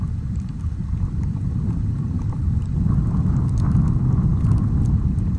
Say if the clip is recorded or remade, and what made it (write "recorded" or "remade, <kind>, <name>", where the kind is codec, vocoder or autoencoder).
recorded